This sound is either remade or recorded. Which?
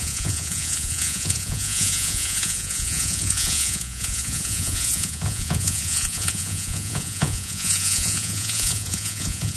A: remade